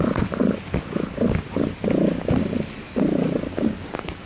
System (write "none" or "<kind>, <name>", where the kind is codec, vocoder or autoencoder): none